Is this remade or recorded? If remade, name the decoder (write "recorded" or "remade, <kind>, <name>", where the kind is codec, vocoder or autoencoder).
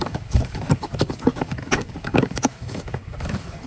remade, codec, DAC